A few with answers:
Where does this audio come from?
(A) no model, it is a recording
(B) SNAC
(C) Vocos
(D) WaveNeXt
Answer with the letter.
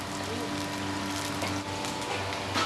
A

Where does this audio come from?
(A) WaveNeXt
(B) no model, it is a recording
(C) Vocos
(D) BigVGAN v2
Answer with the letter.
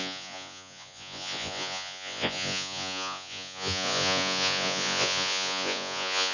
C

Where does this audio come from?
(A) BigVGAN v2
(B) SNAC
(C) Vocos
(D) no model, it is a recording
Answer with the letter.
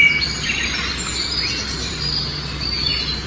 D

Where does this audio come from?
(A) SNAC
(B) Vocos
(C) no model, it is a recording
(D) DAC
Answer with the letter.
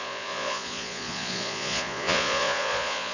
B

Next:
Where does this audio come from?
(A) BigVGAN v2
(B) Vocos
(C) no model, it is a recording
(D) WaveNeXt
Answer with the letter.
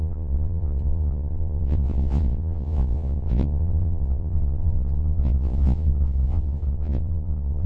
B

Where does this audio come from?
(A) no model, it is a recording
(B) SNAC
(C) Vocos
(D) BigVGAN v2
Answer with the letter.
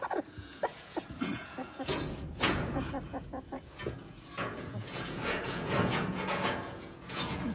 C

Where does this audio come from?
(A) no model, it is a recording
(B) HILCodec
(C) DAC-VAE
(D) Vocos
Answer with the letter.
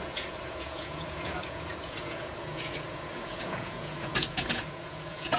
D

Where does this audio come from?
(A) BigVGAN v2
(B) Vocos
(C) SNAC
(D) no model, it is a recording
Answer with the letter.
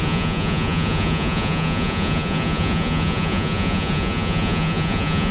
B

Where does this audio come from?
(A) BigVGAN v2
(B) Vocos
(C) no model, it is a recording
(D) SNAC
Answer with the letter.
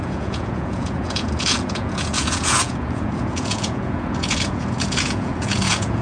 B